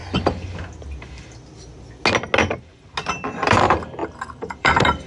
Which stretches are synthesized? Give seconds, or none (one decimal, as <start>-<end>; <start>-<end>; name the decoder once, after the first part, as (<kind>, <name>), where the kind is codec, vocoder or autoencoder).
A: 3.1-5.1 (vocoder, BigVGAN v2)

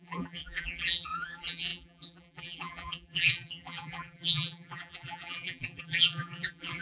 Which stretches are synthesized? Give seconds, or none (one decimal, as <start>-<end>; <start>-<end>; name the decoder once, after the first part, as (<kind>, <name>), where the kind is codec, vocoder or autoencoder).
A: 0.0-6.8 (vocoder, BigVGAN v2)

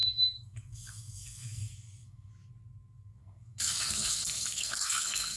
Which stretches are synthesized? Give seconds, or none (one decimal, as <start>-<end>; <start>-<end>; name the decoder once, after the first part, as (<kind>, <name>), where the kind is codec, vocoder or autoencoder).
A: 0.0-2.3 (codec, SNAC); 3.2-5.4

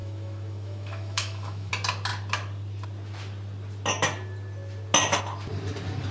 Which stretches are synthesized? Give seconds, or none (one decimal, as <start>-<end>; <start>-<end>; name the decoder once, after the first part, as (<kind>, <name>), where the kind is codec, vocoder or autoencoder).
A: 0.0-1.7 (autoencoder, DAC-VAE)